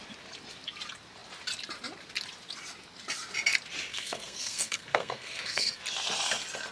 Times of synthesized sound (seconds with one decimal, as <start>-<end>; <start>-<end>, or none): 3.9-5.8